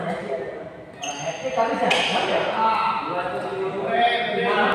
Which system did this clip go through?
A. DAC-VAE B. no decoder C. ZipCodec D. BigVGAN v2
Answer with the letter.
B